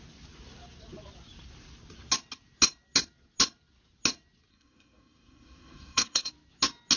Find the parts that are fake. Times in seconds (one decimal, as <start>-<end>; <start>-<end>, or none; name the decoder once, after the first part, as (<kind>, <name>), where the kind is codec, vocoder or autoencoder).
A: 4.5-6.3 (codec, SNAC)